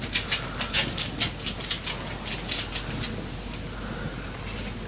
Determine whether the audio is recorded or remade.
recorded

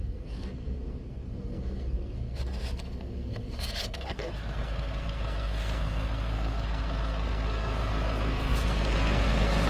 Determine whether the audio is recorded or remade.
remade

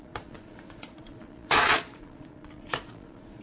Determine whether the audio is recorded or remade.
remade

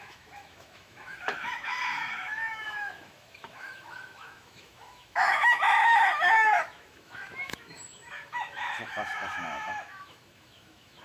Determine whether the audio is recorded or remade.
remade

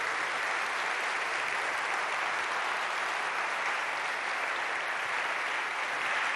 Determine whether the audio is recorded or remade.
recorded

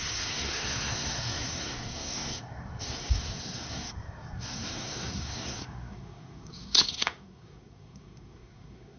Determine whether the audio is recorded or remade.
remade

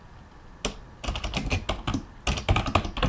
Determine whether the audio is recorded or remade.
recorded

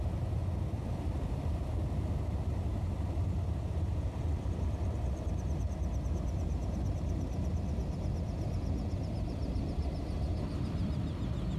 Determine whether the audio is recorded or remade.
recorded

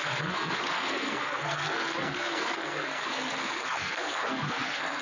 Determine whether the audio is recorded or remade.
remade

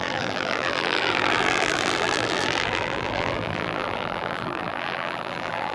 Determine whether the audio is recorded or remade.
remade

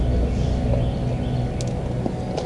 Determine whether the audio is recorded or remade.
recorded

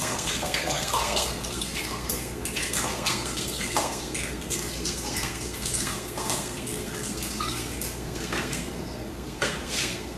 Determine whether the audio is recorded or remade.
remade